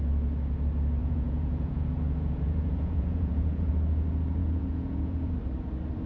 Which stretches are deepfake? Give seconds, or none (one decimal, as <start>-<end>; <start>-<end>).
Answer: 1.0-3.7; 4.4-5.3